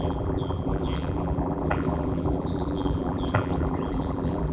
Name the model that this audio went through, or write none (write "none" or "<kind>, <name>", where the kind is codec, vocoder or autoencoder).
vocoder, BigVGAN v2